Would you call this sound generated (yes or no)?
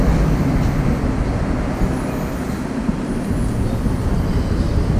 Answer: no